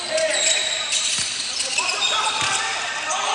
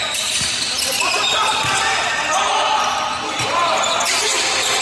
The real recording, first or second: second